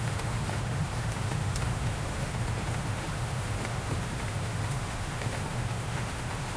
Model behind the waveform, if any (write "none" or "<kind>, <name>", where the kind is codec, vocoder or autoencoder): autoencoder, DAC-VAE